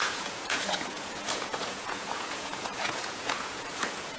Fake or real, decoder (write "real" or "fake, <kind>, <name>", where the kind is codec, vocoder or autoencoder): fake, vocoder, Vocos